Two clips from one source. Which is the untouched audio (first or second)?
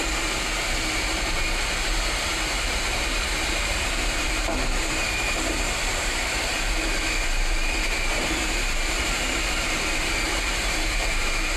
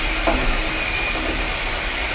second